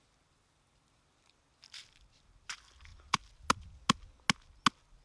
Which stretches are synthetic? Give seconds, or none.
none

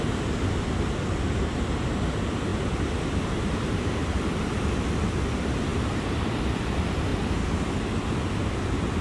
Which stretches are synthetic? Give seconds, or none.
5.7-6.4 (vocoder, BigVGAN v2)

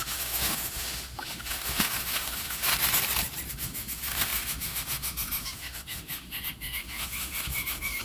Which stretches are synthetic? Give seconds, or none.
0.0-2.7 (autoencoder, DAC-VAE); 3.5-8.0

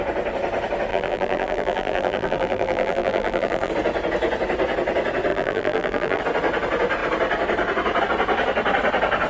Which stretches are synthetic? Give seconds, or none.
0.9-3.7 (vocoder, BigVGAN v2); 5.3-6.2

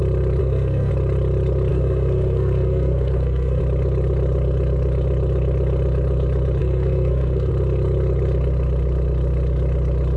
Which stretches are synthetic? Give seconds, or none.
0.4-0.9 (codec, SNAC); 1.7-3.6; 6.6-7.5

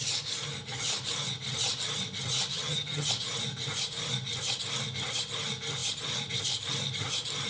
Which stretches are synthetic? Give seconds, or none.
2.5-3.1 (vocoder, HiFi-GAN)

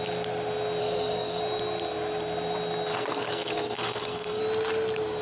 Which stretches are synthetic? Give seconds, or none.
0.8-1.4 (codec, SNAC); 2.9-4.4